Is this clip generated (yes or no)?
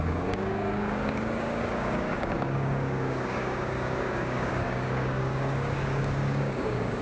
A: yes